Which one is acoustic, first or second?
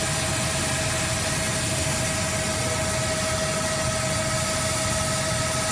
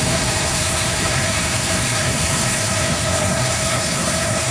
first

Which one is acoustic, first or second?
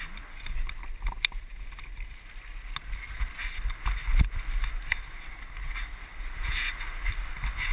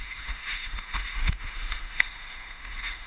first